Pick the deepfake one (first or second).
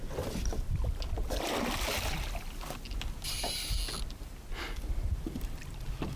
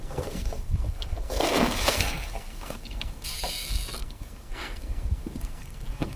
second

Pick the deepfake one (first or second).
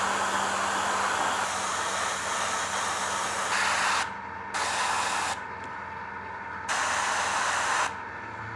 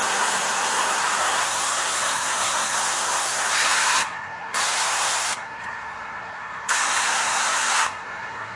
second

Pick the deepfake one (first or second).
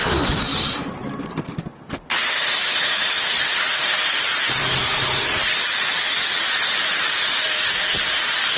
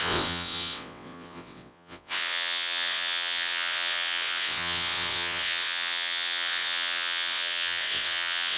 second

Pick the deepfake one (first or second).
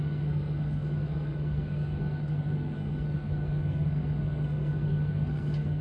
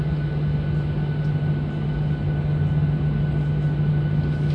first